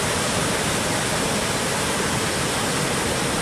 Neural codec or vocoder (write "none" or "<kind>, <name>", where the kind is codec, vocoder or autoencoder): none